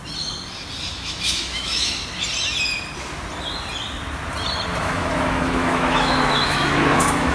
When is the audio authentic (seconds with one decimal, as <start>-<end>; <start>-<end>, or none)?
0.0-0.9; 2.0-4.8